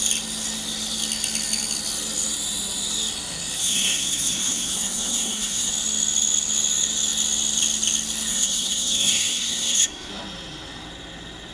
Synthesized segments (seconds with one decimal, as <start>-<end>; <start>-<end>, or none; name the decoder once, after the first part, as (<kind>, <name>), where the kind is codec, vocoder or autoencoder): 3.6-5.7 (codec, SNAC); 8.3-10.1